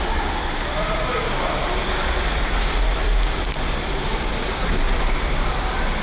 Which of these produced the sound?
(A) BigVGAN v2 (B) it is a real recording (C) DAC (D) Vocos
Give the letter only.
A